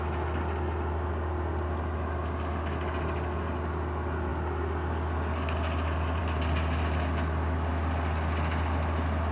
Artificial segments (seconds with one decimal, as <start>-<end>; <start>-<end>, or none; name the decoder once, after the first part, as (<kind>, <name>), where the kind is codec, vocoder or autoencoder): none